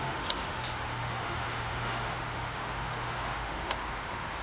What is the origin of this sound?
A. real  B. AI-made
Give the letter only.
B